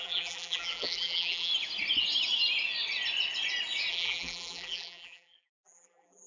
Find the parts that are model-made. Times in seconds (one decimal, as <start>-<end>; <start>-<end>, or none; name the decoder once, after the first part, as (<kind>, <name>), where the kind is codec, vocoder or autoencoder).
0.0-1.5 (vocoder, BigVGAN v2); 3.9-6.3